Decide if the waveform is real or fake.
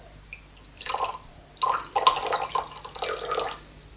real